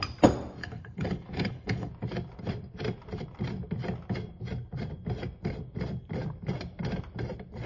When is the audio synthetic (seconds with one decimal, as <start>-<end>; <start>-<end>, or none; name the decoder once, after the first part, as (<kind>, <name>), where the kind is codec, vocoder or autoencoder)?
0.6-1.9 (codec, HILCodec)